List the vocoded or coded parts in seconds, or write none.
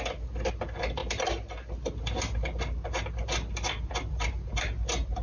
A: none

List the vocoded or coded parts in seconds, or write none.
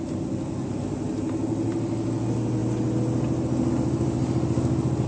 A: none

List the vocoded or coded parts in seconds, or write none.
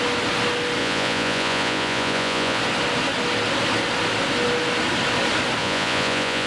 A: 0.8-2.6; 5.6-6.5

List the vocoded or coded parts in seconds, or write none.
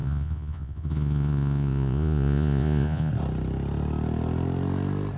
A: 0.0-3.1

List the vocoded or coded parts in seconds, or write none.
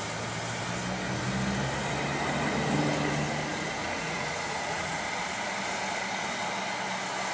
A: 3.8-5.0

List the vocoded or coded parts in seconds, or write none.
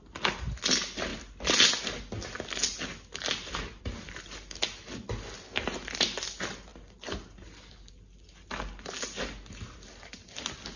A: none